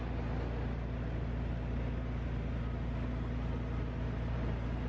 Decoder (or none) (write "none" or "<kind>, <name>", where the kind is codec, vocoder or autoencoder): none